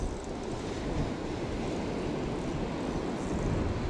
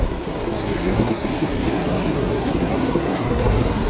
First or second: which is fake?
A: second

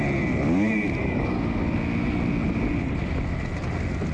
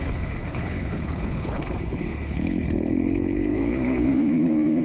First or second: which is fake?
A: second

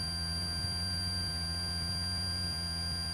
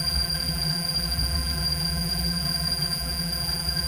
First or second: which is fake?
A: second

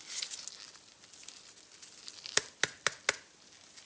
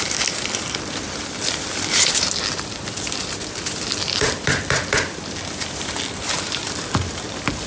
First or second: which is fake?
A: second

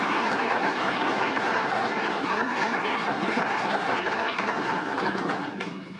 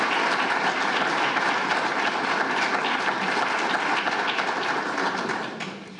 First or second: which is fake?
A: first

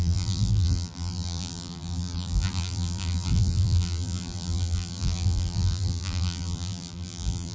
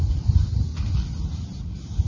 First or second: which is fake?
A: first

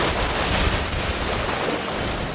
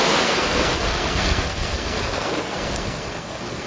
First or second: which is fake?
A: second